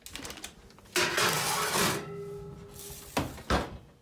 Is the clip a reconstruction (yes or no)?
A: no